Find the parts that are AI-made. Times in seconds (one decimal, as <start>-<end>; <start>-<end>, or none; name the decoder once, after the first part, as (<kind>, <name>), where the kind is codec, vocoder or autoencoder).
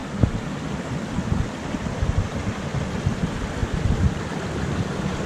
3.2-5.3 (vocoder, BigVGAN v2)